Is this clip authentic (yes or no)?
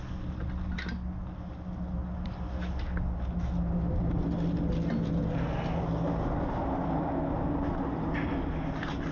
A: yes